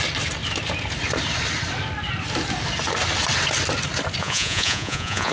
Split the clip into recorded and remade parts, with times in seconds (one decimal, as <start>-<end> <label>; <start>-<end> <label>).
0.0-4.2 recorded; 4.2-5.3 remade